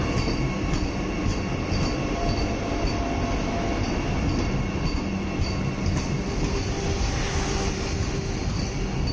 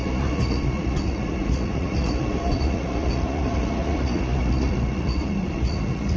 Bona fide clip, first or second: first